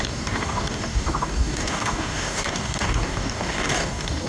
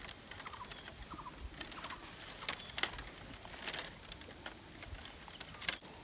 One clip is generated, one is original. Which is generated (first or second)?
first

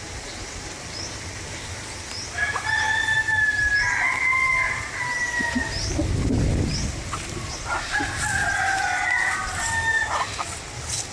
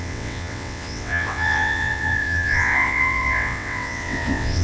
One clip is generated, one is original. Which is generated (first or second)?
second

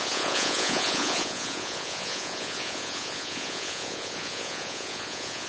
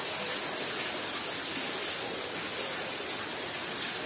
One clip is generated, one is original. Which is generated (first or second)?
first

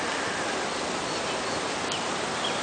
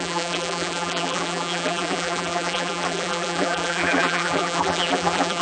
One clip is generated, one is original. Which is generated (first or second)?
second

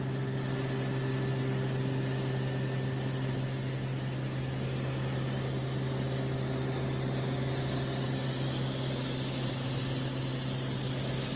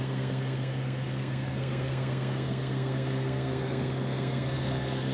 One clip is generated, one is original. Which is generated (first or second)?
second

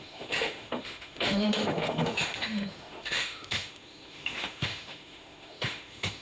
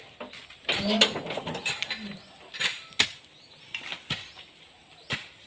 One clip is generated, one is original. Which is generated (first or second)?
first